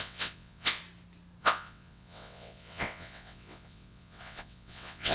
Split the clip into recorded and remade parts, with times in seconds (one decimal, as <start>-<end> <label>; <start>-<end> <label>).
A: 0.0-0.8 remade; 0.8-1.4 recorded; 1.4-5.1 remade